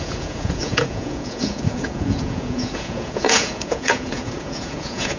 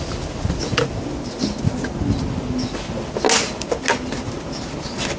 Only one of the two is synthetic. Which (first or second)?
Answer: first